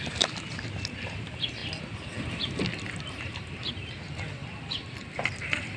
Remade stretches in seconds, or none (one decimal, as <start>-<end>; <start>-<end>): none